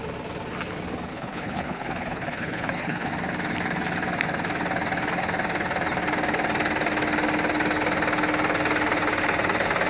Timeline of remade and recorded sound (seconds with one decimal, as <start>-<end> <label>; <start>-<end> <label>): 0.0-1.1 recorded; 1.1-3.1 remade; 3.1-9.9 recorded